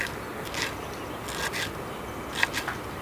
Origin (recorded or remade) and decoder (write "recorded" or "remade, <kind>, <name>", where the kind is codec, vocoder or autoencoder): recorded